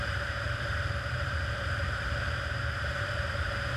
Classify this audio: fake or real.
fake